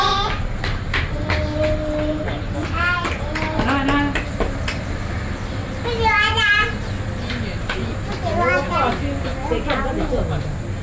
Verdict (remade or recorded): recorded